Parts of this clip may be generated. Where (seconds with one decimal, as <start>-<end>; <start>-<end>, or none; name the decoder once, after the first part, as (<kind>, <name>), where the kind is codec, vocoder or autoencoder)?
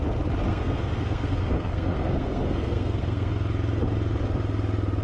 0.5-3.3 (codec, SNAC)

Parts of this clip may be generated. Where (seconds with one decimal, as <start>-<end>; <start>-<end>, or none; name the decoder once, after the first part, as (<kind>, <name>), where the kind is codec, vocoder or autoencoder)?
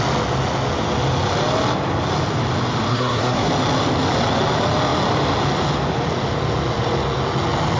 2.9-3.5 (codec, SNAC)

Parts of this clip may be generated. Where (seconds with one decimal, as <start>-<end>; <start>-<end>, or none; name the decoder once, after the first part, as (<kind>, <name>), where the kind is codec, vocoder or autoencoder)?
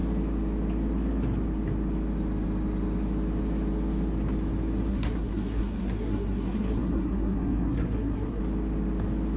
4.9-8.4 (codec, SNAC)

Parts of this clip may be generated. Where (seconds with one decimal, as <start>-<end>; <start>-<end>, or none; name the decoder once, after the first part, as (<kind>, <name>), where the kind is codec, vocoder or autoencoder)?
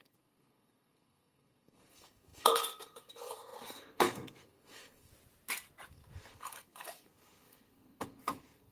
0.0-5.1 (codec, SNAC); 5.9-8.7